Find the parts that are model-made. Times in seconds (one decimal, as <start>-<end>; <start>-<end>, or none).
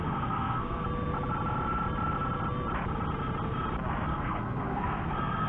0.0-0.8; 4.1-5.5